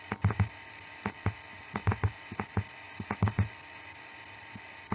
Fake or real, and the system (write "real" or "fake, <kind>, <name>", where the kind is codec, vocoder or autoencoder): real